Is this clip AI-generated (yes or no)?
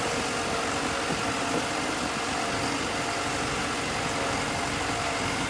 no